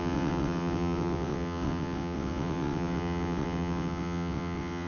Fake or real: fake